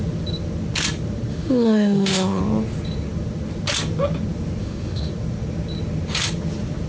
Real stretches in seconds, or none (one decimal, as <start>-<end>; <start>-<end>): 0.0-1.3; 2.4-4.6; 5.1-6.9